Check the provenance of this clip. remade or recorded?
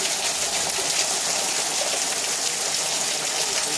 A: recorded